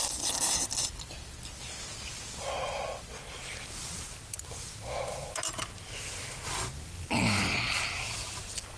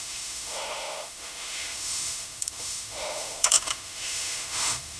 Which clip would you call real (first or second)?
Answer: first